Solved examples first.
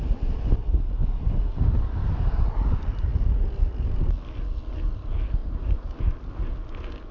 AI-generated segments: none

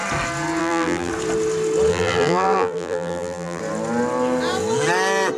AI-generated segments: 0.6-1.1 (vocoder, BigVGAN v2); 1.9-3.6